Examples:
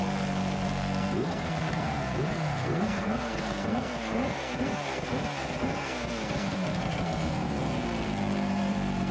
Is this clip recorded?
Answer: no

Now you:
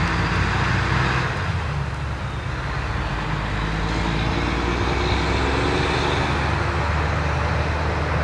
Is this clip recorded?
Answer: yes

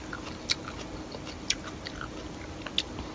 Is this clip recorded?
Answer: yes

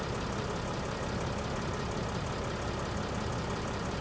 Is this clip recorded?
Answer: yes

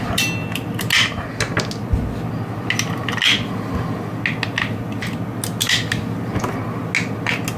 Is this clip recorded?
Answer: yes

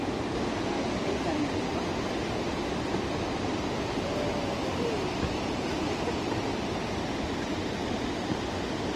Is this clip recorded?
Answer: yes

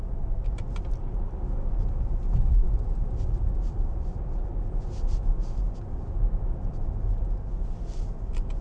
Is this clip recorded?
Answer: yes